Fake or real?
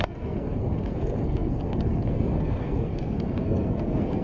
fake